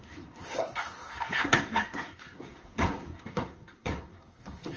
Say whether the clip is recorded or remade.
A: remade